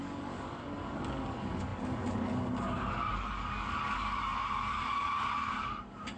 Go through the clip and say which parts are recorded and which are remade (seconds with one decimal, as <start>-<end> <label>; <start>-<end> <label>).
0.0-6.2 remade